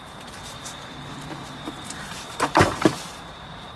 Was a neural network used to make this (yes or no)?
yes